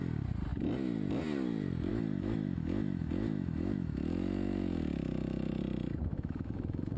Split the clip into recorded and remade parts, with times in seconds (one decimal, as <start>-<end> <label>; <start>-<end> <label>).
0.0-1.9 recorded; 1.9-5.6 remade; 5.6-6.1 recorded; 6.1-7.0 remade

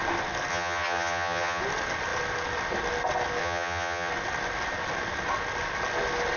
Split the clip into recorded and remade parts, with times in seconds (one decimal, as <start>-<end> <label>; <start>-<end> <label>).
0.0-0.5 recorded; 0.5-1.6 remade; 1.6-3.4 recorded; 3.4-4.1 remade; 4.1-6.4 recorded

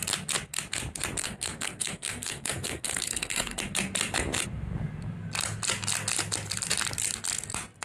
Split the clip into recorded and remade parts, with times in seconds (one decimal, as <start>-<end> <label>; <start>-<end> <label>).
0.0-1.2 recorded; 1.2-3.6 remade; 3.6-7.8 recorded

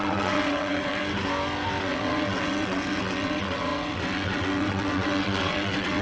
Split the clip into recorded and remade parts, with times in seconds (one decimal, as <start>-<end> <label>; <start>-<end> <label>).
0.0-1.0 remade; 1.0-1.8 recorded; 1.8-6.0 remade